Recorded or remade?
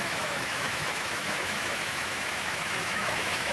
remade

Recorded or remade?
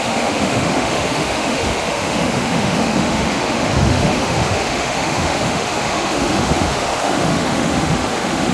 remade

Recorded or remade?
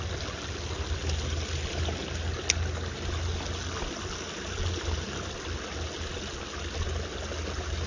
recorded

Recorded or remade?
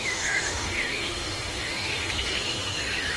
remade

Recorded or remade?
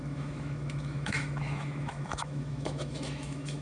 remade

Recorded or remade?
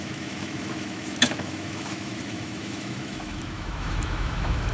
remade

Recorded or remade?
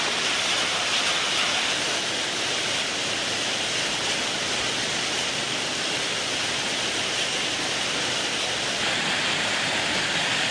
recorded